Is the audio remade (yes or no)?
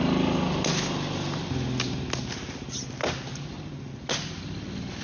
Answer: no